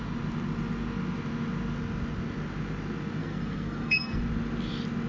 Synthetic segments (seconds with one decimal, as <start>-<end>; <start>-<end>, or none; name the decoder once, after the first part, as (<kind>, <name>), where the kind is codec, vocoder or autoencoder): 3.2-4.2 (codec, SNAC)